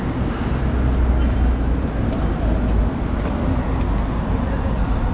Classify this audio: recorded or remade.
recorded